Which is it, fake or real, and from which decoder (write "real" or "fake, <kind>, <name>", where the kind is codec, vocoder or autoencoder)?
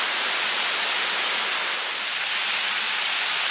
real